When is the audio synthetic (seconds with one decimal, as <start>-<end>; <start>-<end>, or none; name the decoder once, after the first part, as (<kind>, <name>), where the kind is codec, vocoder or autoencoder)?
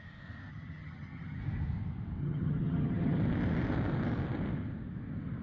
0.5-1.4 (vocoder, HiFi-GAN); 2.2-3.2